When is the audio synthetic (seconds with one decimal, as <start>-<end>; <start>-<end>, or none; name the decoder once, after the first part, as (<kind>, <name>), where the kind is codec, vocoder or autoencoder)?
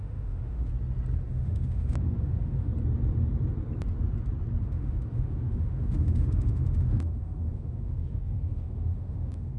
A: 0.0-0.7 (autoencoder, DAC-VAE); 1.3-2.7; 4.6-9.6